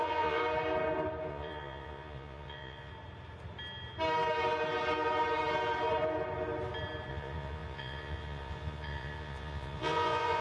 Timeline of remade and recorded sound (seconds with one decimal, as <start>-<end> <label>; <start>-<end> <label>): 0.0-0.4 remade; 0.4-1.3 recorded; 1.3-2.9 remade; 2.9-7.1 recorded; 7.1-10.4 remade